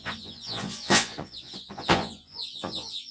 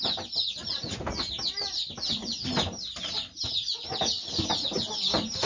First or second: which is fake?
first